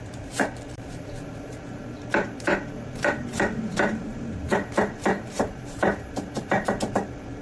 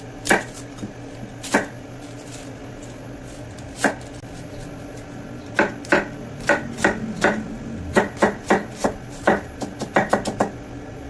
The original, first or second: second